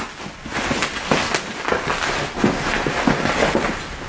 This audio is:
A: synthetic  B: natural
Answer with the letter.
B